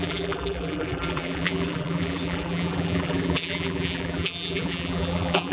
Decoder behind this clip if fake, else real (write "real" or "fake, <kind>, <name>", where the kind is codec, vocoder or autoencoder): fake, vocoder, BigVGAN v2